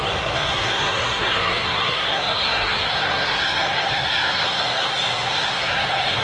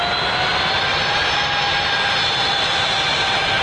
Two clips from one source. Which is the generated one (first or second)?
first